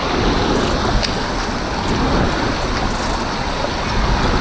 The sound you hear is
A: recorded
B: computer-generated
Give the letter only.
A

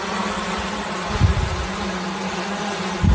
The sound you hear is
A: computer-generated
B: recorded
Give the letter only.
B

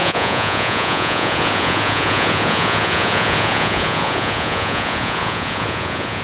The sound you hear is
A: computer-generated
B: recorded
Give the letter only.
A